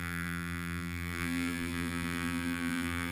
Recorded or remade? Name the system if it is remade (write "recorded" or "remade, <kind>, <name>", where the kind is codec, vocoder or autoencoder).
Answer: remade, vocoder, BigVGAN v2